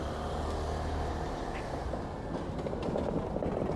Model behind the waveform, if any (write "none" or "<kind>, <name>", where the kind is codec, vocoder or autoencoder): none